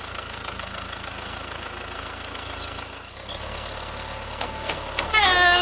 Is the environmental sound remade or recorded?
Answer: remade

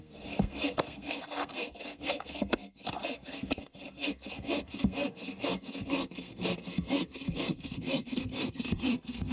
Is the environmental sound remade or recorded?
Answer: remade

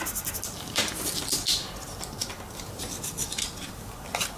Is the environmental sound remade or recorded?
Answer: recorded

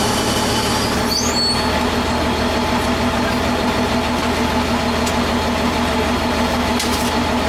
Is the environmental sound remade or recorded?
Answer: recorded